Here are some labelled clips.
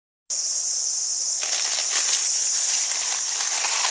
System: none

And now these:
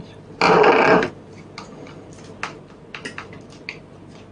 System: none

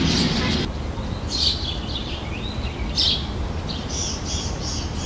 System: none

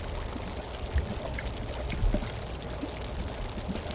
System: none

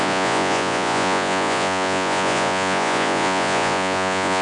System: vocoder, Vocos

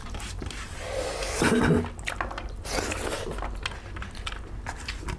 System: none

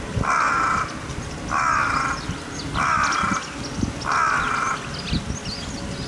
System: none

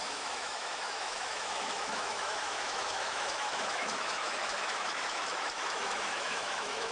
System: autoencoder, DAC-VAE